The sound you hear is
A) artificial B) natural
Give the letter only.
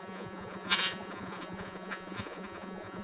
A